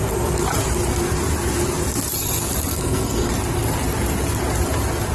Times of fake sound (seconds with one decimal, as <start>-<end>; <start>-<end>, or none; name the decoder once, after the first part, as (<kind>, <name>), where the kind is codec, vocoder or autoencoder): 2.7-3.3 (codec, SNAC)